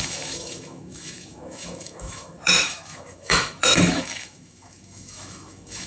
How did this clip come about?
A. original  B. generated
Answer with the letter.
B